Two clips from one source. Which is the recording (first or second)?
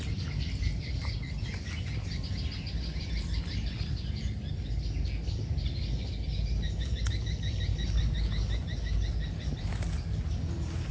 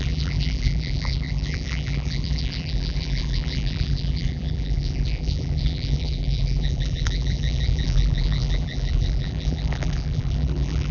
first